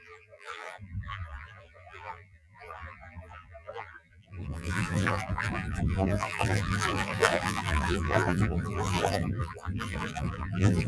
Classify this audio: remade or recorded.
remade